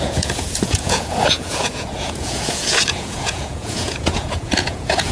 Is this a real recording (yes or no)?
no